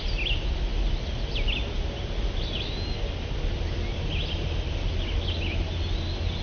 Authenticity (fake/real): real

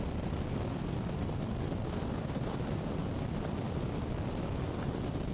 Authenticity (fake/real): real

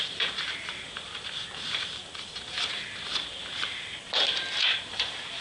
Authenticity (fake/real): fake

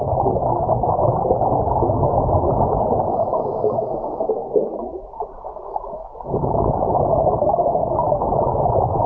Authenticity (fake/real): fake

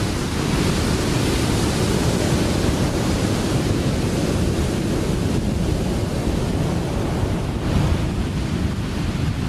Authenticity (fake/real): real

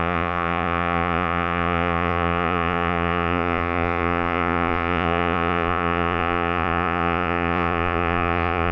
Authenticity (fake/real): fake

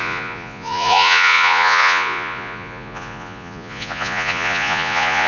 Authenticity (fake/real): fake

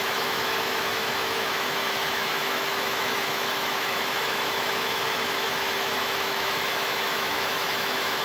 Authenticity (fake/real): fake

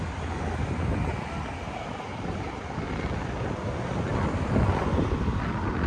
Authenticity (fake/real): real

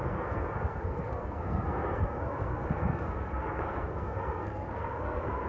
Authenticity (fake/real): fake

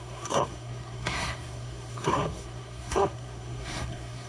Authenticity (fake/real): fake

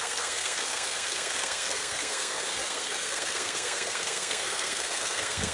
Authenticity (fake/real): fake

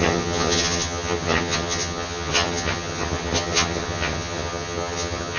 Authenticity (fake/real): fake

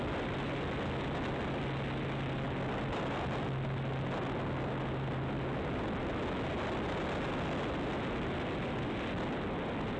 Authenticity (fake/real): real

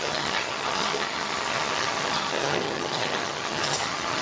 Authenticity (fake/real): fake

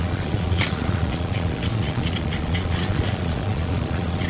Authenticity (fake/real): fake